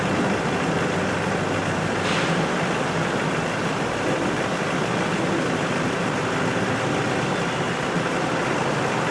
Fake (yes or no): no